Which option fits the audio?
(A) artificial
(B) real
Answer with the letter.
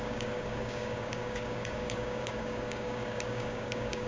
A